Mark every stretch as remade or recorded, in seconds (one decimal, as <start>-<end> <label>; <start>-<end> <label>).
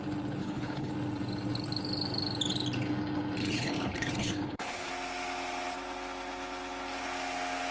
0.0-0.4 recorded; 0.4-0.9 remade; 0.9-3.4 recorded; 3.4-4.9 remade; 4.9-7.7 recorded